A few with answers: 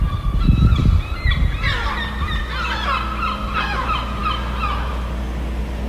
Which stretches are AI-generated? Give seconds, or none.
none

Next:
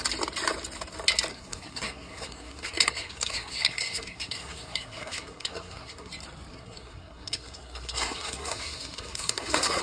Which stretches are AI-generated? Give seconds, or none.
1.3-6.1 (codec, SNAC); 6.5-9.8

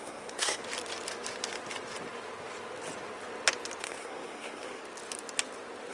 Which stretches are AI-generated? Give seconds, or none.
0.0-0.6 (codec, SNAC); 3.8-4.8

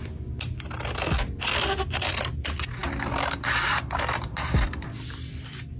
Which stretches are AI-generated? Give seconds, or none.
none